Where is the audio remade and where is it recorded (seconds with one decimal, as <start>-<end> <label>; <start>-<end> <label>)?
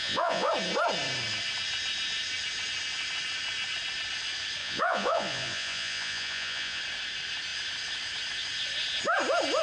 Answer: 0.0-0.5 remade; 0.5-4.6 recorded; 4.6-6.8 remade; 6.8-9.6 recorded